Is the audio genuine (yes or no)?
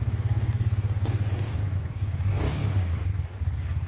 no